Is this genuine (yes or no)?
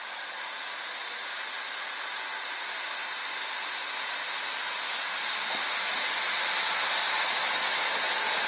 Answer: yes